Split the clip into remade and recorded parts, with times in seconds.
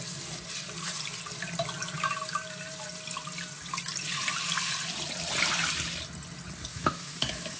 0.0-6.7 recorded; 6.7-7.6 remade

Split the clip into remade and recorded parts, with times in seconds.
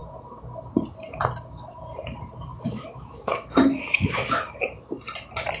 0.0-2.5 recorded; 2.5-4.6 remade; 4.6-5.6 recorded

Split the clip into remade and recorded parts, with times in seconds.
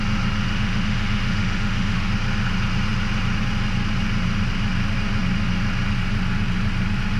0.0-0.4 recorded; 0.4-2.1 remade; 2.1-7.2 recorded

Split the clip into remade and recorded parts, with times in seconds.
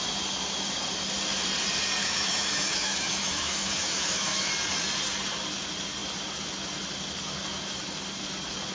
0.0-2.0 recorded; 2.0-4.5 remade; 4.5-8.7 recorded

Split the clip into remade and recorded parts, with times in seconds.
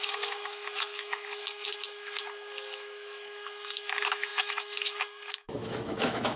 0.0-6.4 remade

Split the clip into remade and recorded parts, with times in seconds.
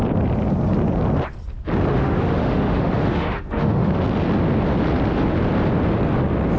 0.0-1.9 recorded; 1.9-3.9 remade; 3.9-6.6 recorded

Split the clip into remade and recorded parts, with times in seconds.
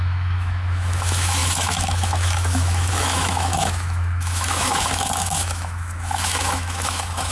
0.0-7.3 remade